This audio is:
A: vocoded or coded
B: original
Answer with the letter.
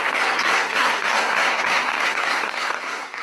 A